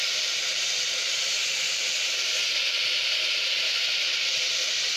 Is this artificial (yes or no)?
no